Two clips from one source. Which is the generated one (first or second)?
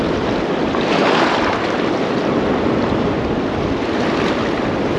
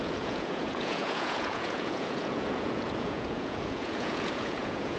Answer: second